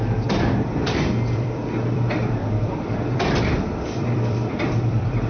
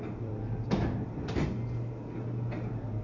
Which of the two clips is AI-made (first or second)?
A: first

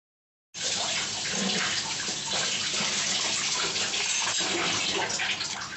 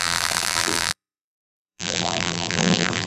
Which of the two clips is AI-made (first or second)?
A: second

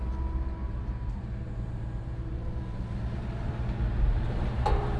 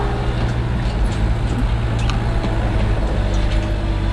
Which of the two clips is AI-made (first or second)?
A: first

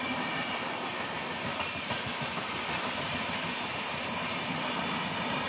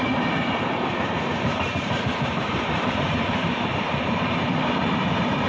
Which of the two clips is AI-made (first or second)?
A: second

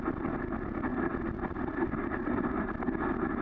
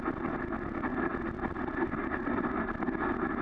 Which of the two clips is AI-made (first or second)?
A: first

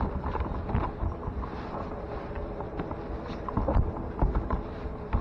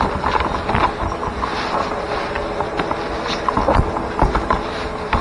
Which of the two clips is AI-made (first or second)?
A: first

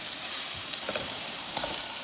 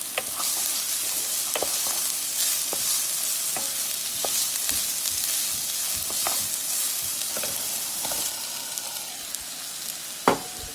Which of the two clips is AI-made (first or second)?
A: first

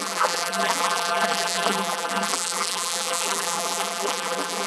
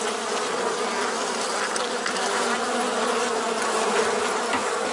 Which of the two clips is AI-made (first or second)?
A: first